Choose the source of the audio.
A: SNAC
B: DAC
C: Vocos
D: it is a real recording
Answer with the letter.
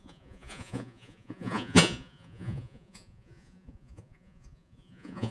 C